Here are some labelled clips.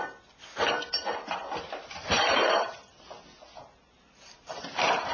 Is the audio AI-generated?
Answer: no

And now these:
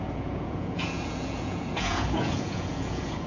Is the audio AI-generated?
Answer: yes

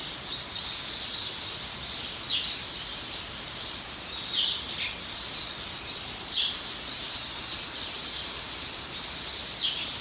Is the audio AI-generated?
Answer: no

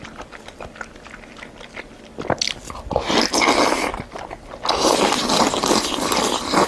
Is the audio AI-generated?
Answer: no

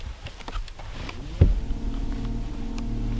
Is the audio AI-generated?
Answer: no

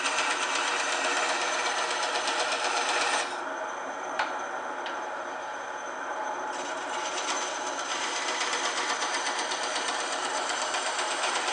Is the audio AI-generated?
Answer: yes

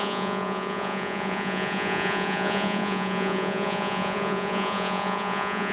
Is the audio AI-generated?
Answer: yes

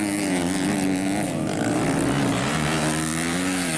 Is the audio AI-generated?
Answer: no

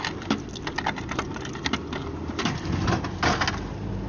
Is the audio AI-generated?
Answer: no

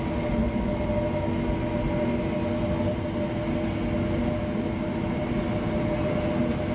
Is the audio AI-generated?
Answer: no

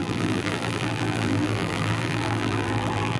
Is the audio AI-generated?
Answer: yes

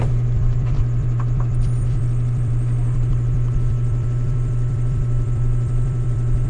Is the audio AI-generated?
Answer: yes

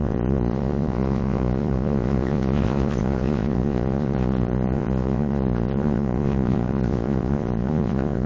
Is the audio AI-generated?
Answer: yes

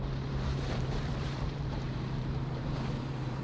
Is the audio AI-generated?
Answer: yes